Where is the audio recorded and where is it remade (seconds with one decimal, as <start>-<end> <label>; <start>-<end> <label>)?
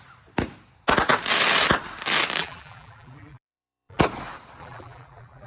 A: 0.0-2.4 recorded; 2.4-4.0 remade; 4.0-4.6 recorded; 4.6-5.5 remade